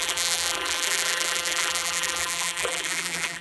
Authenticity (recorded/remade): remade